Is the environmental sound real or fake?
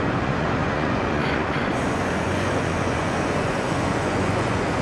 fake